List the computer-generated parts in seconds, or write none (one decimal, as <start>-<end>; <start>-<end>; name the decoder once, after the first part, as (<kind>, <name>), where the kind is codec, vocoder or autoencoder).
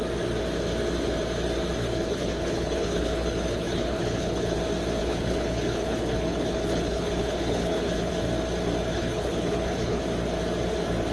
1.8-4.6 (codec, HILCodec); 5.0-8.1; 8.9-10.0